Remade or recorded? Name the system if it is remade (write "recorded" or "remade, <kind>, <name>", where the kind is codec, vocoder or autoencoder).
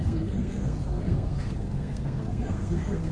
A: remade, codec, SNAC